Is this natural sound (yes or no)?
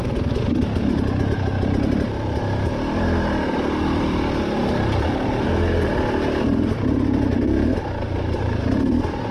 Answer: no